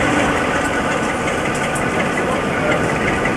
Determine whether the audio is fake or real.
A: real